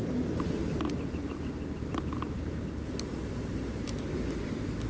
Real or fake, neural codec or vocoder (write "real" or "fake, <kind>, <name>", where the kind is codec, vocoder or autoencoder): fake, vocoder, BigVGAN v2